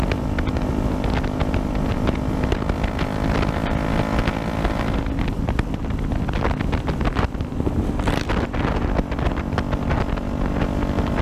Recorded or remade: recorded